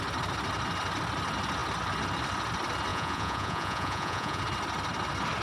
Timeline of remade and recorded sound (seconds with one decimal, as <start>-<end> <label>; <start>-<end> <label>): 0.0-2.9 recorded; 2.9-4.4 remade; 4.4-5.4 recorded